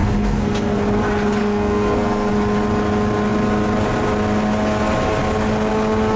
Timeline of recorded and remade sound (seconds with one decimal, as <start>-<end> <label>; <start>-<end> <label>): 0.0-0.7 remade; 0.7-1.4 recorded; 1.4-2.3 remade; 2.3-6.2 recorded